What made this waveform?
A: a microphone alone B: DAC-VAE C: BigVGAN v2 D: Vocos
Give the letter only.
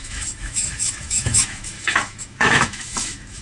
B